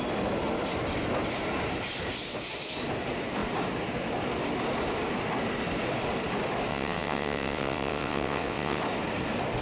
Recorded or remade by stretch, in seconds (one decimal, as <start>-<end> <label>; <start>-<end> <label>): 0.0-6.7 recorded; 6.7-8.8 remade; 8.8-9.6 recorded